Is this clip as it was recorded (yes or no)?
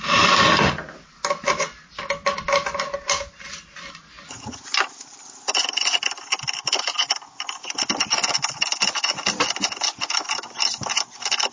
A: yes